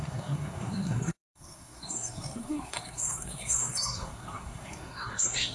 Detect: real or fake fake